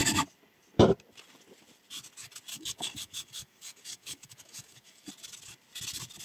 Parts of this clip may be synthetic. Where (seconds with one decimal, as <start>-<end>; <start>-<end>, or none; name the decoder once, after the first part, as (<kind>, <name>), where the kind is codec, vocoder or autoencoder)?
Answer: 2.5-5.1 (codec, DAC)